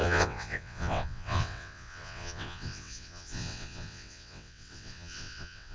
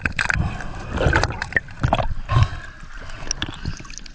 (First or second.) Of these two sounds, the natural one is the second